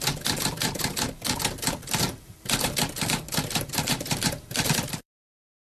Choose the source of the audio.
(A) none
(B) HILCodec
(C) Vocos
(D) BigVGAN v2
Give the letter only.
D